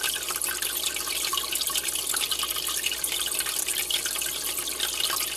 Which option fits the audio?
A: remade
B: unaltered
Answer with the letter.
B